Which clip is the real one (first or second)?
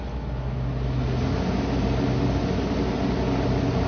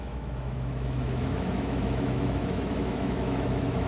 first